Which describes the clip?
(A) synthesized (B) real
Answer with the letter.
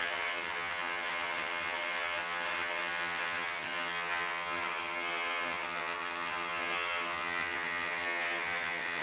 A